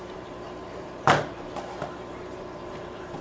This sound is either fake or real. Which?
fake